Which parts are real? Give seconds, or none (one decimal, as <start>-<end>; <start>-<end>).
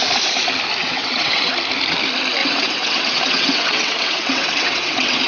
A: 0.0-0.8; 1.5-2.4